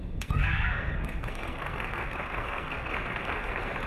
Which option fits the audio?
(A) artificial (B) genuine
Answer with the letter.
A